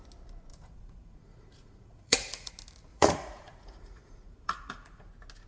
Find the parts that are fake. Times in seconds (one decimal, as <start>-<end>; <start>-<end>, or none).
0.5-2.5; 2.9-5.1